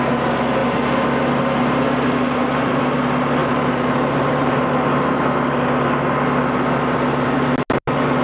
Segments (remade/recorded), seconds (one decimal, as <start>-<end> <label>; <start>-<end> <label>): 0.0-8.2 recorded